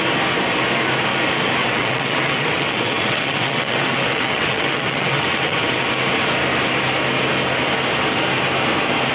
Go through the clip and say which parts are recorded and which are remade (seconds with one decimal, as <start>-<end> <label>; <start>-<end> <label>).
0.0-1.6 recorded; 1.6-5.9 remade; 5.9-9.1 recorded